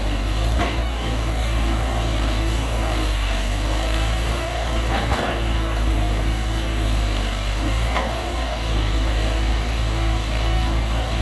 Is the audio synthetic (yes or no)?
yes